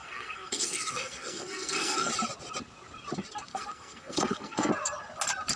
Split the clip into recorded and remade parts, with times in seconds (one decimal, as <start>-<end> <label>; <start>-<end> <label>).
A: 0.0-2.1 remade; 2.1-3.5 recorded; 3.5-4.7 remade; 4.7-5.6 recorded

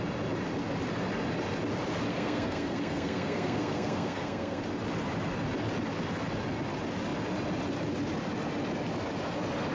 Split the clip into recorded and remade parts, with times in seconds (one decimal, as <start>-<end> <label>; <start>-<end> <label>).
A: 0.0-2.1 recorded; 2.1-4.6 remade; 4.6-9.7 recorded

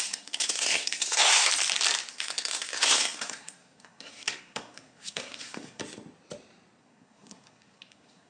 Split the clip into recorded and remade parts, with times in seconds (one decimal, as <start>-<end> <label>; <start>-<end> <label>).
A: 0.0-1.5 remade; 1.5-2.1 recorded; 2.1-5.8 remade; 5.8-6.8 recorded; 6.8-8.3 remade